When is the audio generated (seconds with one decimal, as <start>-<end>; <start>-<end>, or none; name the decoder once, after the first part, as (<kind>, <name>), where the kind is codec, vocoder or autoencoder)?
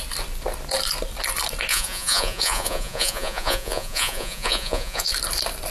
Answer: 1.7-5.1 (vocoder, Vocos)